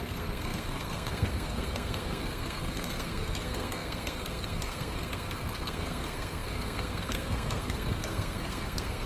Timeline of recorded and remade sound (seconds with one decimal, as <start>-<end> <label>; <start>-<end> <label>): 0.0-9.1 remade